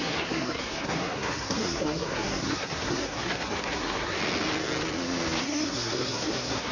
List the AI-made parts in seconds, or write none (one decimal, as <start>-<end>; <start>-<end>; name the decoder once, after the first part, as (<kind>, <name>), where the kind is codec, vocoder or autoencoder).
0.0-4.2 (codec, SNAC); 5.4-6.7

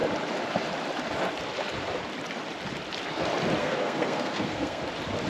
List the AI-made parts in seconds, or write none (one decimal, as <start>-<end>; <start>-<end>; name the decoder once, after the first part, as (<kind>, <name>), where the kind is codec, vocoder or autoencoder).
3.6-4.8 (codec, SNAC)

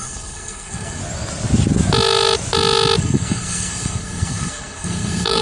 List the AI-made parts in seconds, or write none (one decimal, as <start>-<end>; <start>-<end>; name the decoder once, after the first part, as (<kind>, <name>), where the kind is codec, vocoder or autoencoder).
0.0-1.0 (codec, SNAC); 3.0-5.4

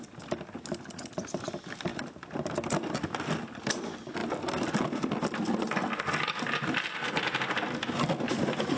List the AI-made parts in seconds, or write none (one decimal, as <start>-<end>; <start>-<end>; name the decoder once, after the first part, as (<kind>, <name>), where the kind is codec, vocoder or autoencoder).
none